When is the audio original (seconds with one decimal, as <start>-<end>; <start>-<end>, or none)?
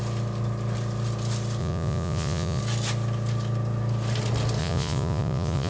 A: 0.0-1.6; 2.6-4.6